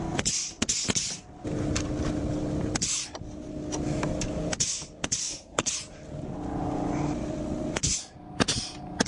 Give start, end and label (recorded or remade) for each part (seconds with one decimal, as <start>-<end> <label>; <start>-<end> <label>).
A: 0.0-5.2 recorded; 5.2-5.7 remade; 5.7-9.1 recorded